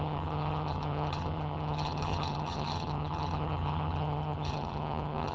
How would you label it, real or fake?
fake